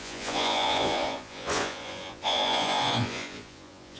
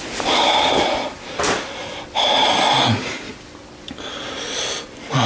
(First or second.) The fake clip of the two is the first